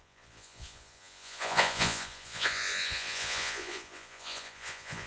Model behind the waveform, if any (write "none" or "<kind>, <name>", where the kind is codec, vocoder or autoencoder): vocoder, Vocos